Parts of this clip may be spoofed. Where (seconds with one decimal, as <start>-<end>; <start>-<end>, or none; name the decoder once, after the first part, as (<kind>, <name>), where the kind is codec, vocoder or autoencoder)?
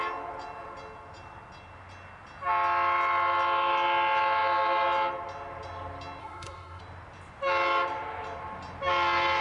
6.2-6.8 (codec, SNAC)